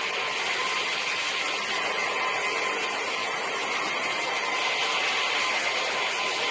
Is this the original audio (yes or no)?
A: yes